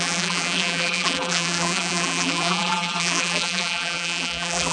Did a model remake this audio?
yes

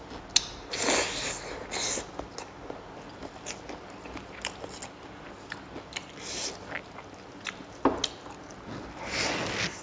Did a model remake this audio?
no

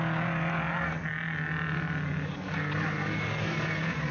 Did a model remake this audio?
no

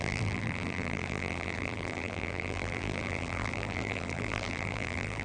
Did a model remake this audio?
yes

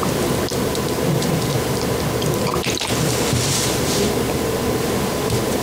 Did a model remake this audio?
yes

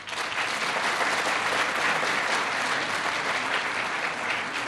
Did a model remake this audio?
no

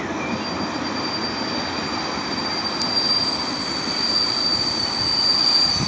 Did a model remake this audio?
yes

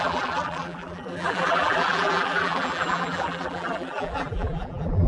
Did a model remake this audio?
yes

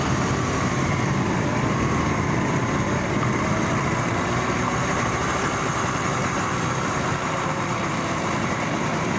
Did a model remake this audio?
yes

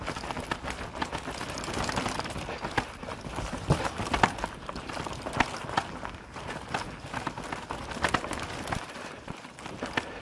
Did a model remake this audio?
no